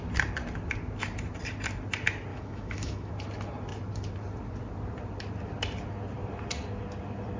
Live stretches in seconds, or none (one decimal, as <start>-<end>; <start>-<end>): 0.0-2.3; 3.1-7.4